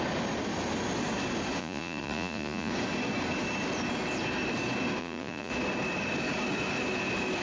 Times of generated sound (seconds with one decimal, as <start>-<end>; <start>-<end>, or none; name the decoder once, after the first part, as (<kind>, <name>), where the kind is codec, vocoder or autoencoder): 1.6-2.7 (vocoder, Vocos); 5.0-5.5